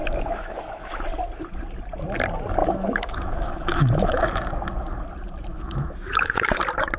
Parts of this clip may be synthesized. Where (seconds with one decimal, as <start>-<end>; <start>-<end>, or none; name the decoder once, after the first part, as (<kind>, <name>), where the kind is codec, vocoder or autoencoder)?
0.0-1.0 (autoencoder, DAC-VAE); 2.6-4.2; 5.5-6.6